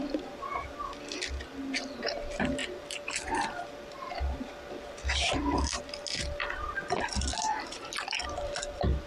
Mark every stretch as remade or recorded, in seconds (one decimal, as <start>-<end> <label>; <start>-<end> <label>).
0.0-9.1 recorded